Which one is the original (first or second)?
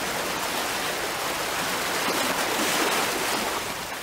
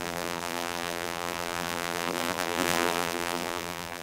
first